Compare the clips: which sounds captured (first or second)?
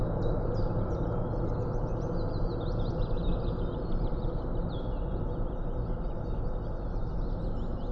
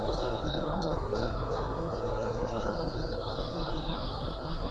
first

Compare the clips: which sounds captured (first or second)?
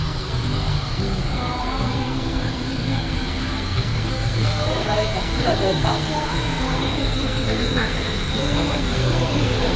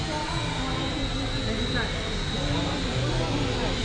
second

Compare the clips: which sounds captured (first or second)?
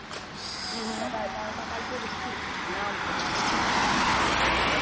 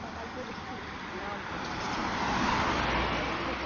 first